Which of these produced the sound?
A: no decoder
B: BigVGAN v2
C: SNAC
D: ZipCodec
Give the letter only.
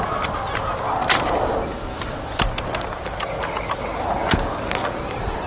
A